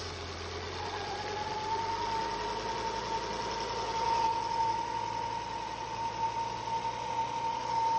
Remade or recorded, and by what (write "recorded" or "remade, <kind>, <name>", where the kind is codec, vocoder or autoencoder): recorded